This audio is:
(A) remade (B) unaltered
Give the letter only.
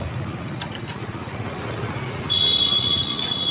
A